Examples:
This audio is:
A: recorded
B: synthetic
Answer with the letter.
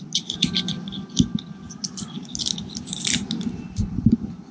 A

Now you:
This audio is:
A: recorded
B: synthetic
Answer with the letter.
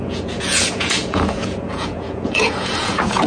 B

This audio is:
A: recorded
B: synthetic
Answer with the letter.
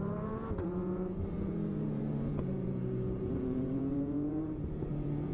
B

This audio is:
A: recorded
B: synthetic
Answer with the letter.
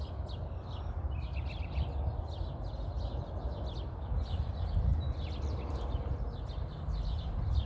A